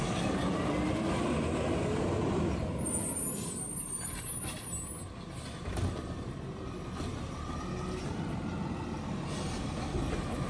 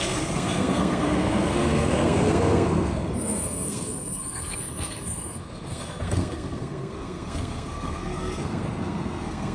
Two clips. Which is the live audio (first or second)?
first